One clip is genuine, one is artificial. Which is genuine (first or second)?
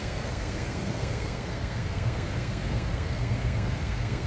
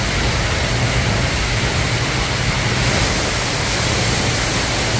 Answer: second